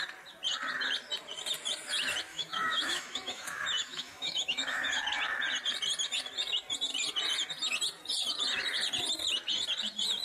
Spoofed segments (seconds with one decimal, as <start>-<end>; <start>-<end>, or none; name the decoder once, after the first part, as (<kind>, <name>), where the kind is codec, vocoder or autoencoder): 2.3-5.0 (autoencoder, DAC-VAE)